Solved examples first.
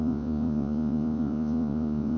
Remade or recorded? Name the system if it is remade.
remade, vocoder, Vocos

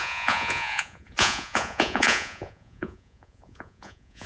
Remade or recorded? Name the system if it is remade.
remade, vocoder, Vocos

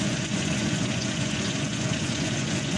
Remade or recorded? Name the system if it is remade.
remade, vocoder, Vocos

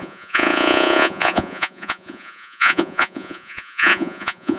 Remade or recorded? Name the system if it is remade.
remade, vocoder, Vocos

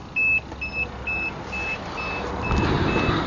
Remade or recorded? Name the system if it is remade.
recorded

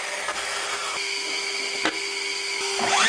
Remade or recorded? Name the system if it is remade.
recorded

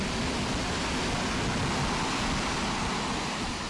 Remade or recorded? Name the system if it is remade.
recorded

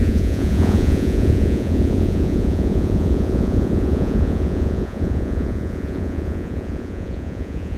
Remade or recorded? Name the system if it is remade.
remade, vocoder, Vocos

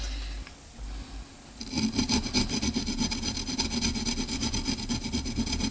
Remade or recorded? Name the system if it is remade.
recorded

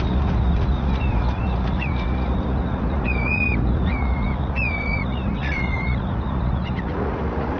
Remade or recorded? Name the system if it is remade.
remade, vocoder, Vocos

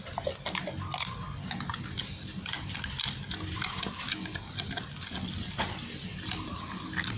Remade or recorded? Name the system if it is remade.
recorded